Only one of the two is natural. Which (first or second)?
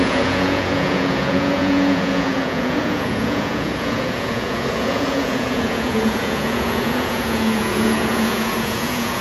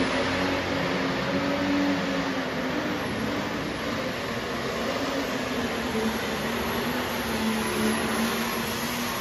second